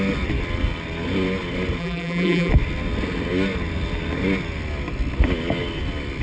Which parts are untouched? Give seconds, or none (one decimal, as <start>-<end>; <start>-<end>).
0.0-1.8; 2.5-6.2